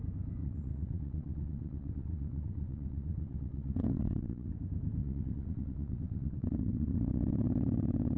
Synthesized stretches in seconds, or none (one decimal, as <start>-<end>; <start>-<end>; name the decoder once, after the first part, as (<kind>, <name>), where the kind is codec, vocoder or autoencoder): 0.4-4.5 (vocoder, WaveNeXt); 5.0-8.2